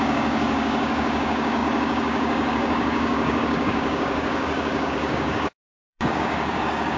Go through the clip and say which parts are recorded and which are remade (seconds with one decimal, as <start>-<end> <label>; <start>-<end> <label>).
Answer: 0.0-7.0 remade